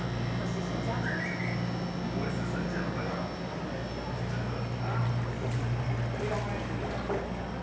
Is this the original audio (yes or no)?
yes